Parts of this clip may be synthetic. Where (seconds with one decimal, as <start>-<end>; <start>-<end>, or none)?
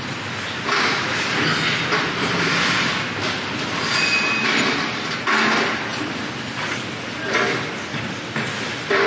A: none